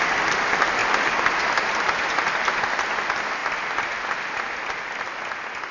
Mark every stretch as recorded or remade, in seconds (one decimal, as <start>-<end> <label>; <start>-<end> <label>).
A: 0.0-5.7 recorded